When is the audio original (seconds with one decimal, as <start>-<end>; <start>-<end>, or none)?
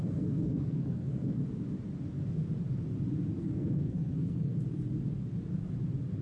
1.4-3.4; 4.5-6.2